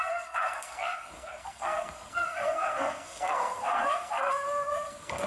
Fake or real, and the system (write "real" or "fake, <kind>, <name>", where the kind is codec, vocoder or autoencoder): fake, codec, SNAC